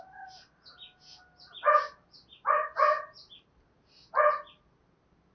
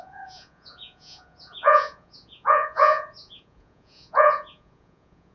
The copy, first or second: second